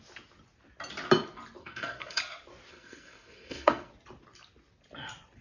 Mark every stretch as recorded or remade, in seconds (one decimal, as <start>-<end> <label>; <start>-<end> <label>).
0.0-1.6 recorded; 1.6-2.2 remade; 2.2-2.7 recorded; 2.7-3.9 remade; 3.9-5.4 recorded